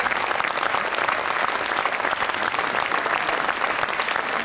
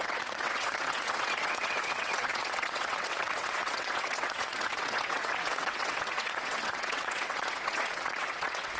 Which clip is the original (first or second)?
first